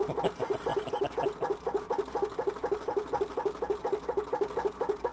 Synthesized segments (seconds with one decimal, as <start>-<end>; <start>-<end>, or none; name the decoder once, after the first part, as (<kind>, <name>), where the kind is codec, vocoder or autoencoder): none